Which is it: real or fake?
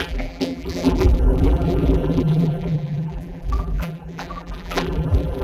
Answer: fake